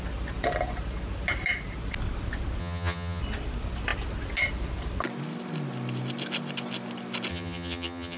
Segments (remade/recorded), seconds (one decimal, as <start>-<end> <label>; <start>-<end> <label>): 0.0-2.6 recorded; 2.6-3.2 remade; 3.2-7.3 recorded; 7.3-8.2 remade